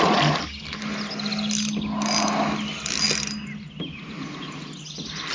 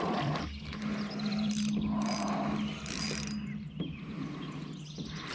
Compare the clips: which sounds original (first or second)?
first